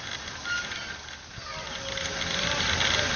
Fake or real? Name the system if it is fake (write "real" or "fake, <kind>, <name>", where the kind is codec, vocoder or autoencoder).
real